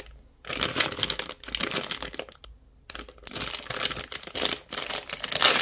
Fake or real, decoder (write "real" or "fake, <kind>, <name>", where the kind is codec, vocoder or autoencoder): real